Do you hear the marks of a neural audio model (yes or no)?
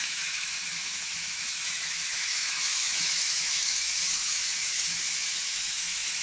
yes